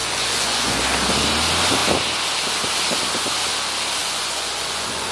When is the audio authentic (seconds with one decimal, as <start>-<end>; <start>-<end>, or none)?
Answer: 0.8-4.0

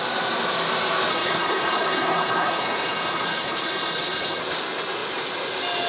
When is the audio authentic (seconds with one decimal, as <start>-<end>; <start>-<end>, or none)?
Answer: 0.0-1.1; 4.4-5.9

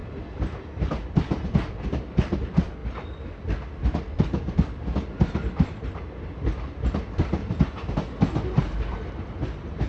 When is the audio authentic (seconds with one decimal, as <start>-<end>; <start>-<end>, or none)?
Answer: 2.8-3.8; 7.4-8.5